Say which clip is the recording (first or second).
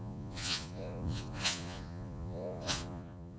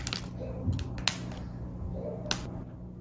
second